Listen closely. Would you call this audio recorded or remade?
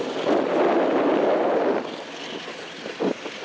recorded